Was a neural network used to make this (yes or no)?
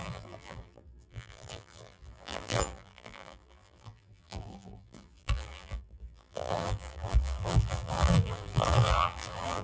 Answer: yes